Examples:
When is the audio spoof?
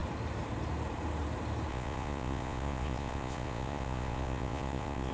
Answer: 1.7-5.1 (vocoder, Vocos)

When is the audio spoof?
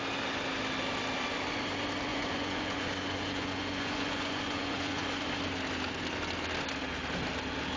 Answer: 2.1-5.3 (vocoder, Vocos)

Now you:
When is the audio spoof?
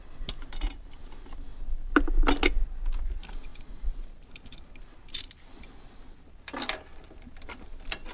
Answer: none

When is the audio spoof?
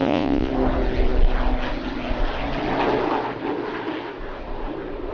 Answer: 0.0-0.5 (vocoder, Vocos)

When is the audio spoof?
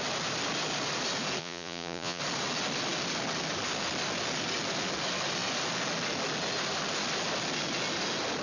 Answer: 1.4-2.2 (vocoder, Vocos)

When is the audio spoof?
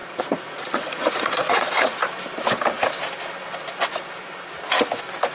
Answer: 0.0-2.0 (vocoder, Vocos)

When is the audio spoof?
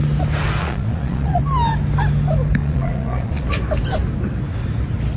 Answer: 0.6-1.4 (vocoder, Vocos); 2.6-3.5